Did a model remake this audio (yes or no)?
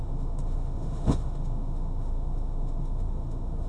yes